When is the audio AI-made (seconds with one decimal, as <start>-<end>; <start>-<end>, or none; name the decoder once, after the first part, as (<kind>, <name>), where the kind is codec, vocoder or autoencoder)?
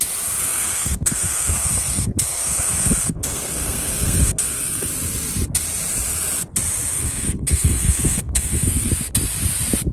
0.4-4.9 (codec, SNAC); 6.9-8.9